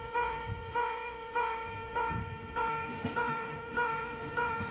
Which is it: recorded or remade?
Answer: remade